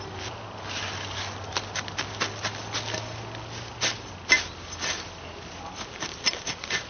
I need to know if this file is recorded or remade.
recorded